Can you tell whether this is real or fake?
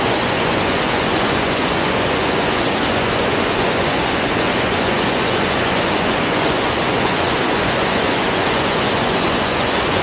fake